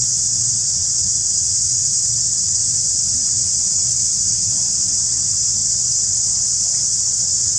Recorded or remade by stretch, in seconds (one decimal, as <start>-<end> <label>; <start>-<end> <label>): 0.0-7.6 remade